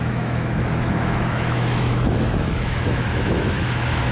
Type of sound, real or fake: fake